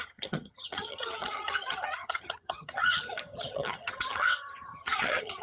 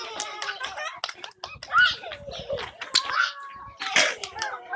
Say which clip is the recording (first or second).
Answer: second